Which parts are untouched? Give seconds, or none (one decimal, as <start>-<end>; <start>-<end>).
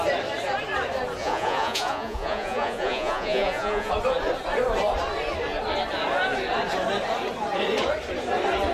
0.0-1.2; 3.9-8.7